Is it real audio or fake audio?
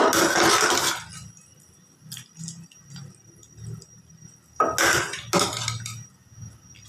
real